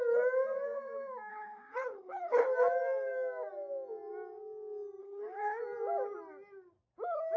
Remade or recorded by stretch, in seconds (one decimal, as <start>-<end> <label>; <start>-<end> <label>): 0.0-1.3 recorded; 1.3-2.4 remade; 2.4-5.0 recorded; 5.0-5.6 remade; 5.6-7.4 recorded